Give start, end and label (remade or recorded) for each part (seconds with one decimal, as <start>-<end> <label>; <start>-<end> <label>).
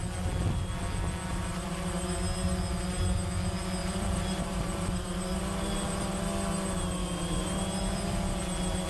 0.0-1.3 recorded; 1.3-1.9 remade; 1.9-3.8 recorded; 3.8-6.2 remade; 6.2-8.9 recorded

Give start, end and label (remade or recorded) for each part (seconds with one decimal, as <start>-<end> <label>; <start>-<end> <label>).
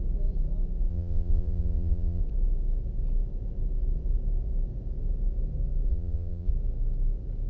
0.0-0.9 recorded; 0.9-2.2 remade; 2.2-5.9 recorded; 5.9-6.5 remade; 6.5-7.5 recorded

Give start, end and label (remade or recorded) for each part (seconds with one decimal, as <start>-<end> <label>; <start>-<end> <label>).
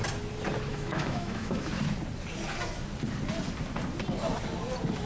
0.0-0.7 recorded; 0.7-1.7 remade; 1.7-5.1 recorded